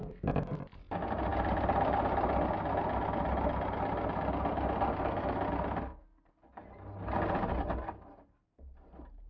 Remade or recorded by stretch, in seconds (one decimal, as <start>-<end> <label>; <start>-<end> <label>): 0.0-9.3 recorded